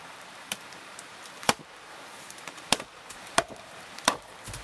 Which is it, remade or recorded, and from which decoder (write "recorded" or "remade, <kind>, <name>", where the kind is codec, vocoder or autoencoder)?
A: remade, vocoder, BigVGAN v2